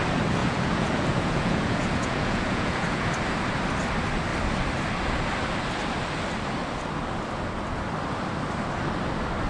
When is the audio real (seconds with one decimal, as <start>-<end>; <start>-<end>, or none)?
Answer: 0.0-0.4; 3.1-9.5